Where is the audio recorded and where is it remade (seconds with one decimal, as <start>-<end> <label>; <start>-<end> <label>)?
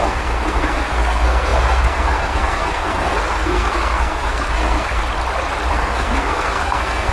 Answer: 0.0-5.0 remade; 5.0-5.7 recorded; 5.7-7.1 remade